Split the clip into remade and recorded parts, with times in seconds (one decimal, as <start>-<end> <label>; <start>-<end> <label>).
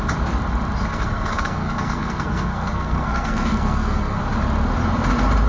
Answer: 0.0-0.9 recorded; 0.9-4.2 remade; 4.2-5.5 recorded